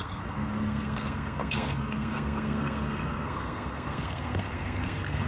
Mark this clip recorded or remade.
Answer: remade